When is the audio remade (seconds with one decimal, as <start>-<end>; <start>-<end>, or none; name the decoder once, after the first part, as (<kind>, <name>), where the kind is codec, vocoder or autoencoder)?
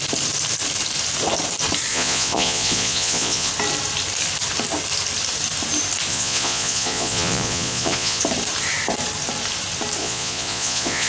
1.9-3.5 (vocoder, Vocos); 6.1-8.2; 10.0-11.1